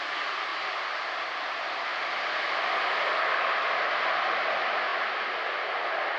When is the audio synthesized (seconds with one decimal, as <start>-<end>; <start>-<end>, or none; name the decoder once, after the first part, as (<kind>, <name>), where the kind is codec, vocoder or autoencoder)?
none